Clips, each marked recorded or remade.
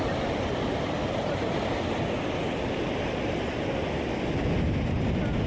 recorded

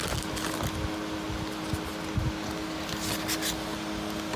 recorded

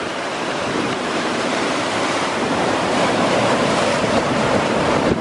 remade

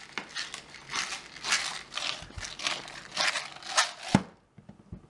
recorded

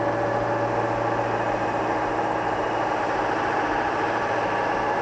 recorded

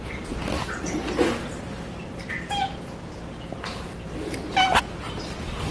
recorded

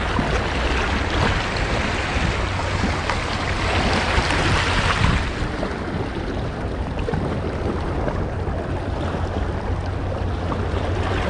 recorded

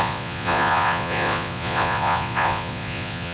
remade